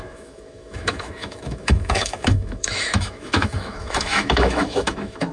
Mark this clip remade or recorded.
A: remade